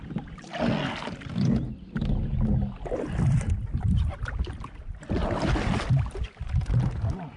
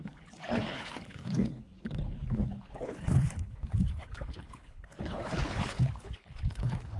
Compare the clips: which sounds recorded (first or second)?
first